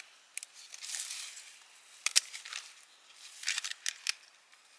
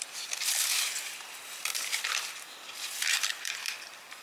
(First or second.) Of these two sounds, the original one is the first